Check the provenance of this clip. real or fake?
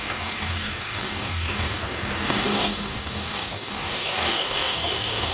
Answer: fake